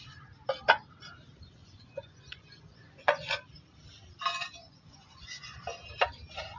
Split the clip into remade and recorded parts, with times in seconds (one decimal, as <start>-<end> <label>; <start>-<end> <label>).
0.0-1.6 recorded; 1.6-3.3 remade; 3.3-4.6 recorded; 4.6-5.6 remade; 5.6-6.6 recorded